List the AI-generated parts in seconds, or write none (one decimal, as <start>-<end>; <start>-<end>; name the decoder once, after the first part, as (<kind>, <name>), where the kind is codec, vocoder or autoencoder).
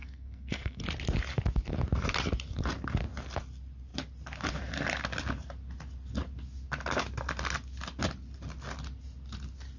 0.0-0.8 (codec, SNAC)